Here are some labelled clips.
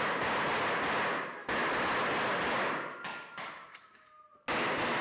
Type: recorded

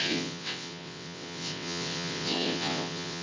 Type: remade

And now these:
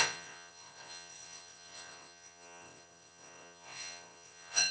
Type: remade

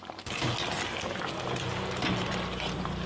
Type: recorded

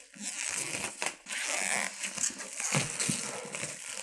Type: recorded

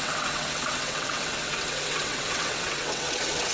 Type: remade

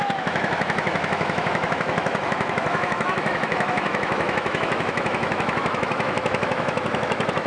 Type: remade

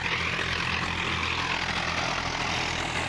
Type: recorded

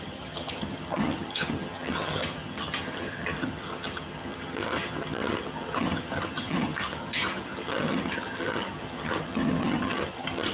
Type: remade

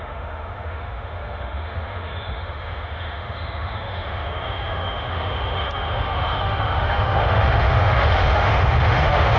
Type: remade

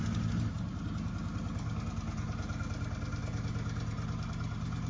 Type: recorded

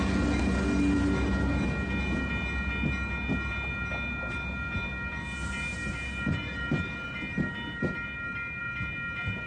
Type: recorded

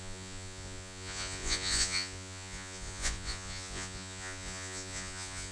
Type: remade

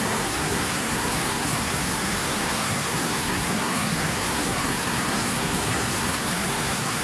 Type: remade